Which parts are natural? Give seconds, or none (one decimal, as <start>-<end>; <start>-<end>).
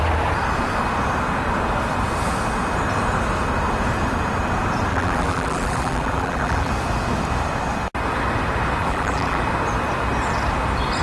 0.0-4.9; 6.7-8.8; 9.4-11.0